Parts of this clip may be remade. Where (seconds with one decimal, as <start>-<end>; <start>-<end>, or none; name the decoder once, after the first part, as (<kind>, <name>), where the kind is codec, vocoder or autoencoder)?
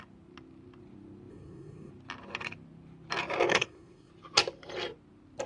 1.3-1.9 (codec, SNAC); 3.5-4.1